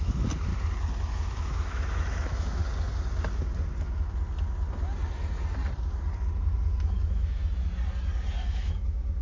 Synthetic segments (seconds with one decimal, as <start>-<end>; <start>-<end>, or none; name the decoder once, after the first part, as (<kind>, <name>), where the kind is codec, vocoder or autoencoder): 0.0-0.5 (autoencoder, DAC-VAE); 1.1-2.6; 6.8-7.4; 8.5-9.2